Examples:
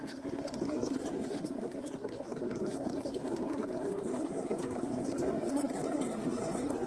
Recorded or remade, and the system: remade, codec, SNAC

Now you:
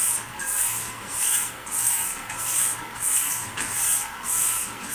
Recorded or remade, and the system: remade, codec, SNAC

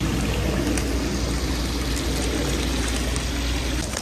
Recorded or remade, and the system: recorded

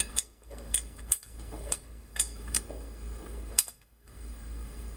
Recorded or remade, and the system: remade, codec, SNAC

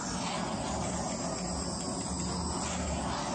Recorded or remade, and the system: recorded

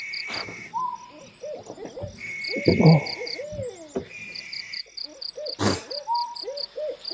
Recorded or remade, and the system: recorded